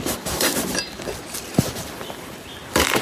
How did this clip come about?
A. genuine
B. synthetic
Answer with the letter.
B